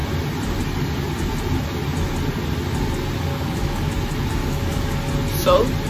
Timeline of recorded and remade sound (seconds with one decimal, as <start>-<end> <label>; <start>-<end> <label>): 0.0-3.3 recorded; 3.3-3.9 remade; 3.9-4.4 recorded; 4.4-5.0 remade; 5.0-5.9 recorded